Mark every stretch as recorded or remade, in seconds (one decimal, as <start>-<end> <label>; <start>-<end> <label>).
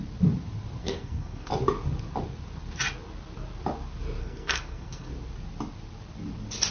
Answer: 0.0-0.8 recorded; 0.8-1.5 remade; 1.5-4.2 recorded; 4.2-5.1 remade; 5.1-6.7 recorded